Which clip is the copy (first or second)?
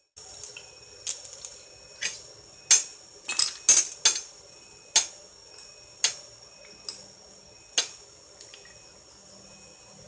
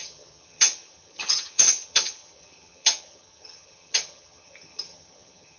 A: second